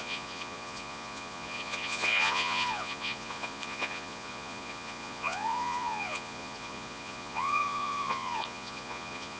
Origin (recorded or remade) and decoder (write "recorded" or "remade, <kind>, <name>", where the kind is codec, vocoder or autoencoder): remade, vocoder, Vocos